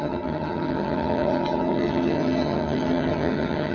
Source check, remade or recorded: remade